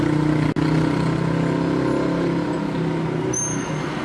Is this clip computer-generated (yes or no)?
no